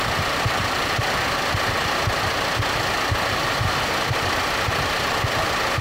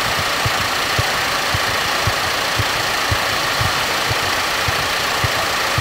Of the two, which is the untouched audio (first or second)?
first